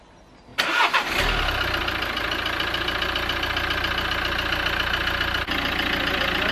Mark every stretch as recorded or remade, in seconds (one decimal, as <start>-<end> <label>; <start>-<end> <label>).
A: 0.0-6.5 recorded